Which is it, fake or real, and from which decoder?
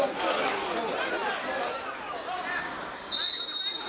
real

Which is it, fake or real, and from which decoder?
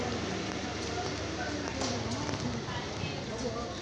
real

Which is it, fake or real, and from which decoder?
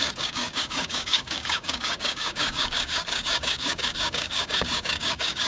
fake, codec, DAC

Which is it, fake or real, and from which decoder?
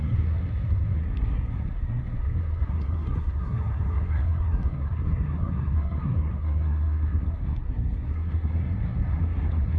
fake, codec, SNAC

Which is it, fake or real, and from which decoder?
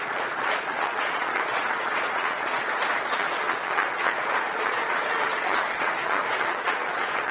fake, vocoder, Vocos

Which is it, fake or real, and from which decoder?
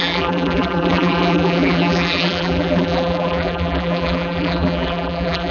fake, vocoder, BigVGAN v2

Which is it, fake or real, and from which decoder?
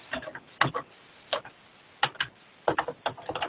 real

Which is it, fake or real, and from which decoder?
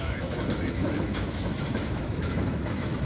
fake, autoencoder, DAC-VAE